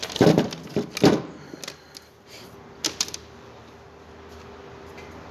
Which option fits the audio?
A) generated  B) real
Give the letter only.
B